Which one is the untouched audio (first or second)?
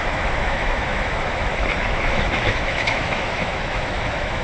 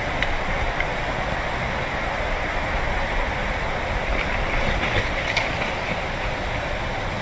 second